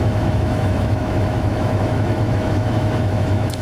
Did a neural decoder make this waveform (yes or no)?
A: yes